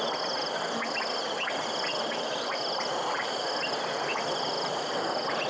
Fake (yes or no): no